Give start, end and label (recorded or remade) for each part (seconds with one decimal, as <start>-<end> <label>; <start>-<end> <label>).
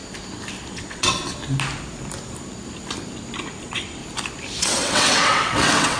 0.0-0.7 recorded; 0.7-1.4 remade; 1.4-3.6 recorded; 3.6-4.0 remade; 4.0-4.6 recorded; 4.6-6.0 remade